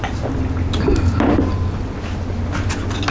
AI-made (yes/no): no